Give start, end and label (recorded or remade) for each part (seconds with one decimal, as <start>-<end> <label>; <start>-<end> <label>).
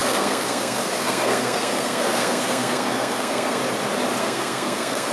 0.0-3.6 remade; 3.6-4.2 recorded; 4.2-5.1 remade